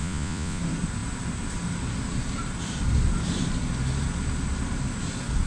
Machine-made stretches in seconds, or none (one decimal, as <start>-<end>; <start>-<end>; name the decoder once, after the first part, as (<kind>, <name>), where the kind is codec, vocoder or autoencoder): 0.0-0.6 (vocoder, Vocos)